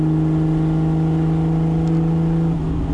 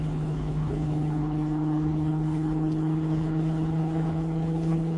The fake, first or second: second